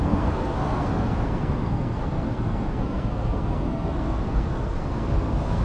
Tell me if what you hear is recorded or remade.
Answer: remade